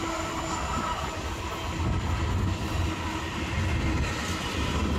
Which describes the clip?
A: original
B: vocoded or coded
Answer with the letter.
A